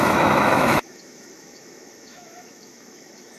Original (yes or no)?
no